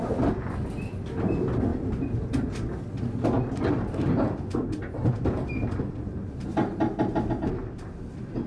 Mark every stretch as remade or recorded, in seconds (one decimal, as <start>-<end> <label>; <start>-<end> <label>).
0.0-8.5 recorded